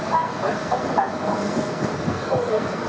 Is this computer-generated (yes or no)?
yes